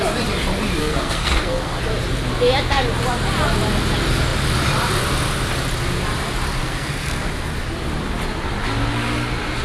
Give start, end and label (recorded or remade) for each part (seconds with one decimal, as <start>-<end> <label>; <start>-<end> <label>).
0.0-0.8 recorded; 0.8-1.8 remade; 1.8-6.6 recorded; 6.6-7.3 remade; 7.3-9.6 recorded